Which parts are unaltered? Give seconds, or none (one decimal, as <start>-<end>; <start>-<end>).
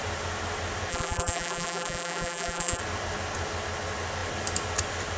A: 0.0-0.9; 2.8-5.2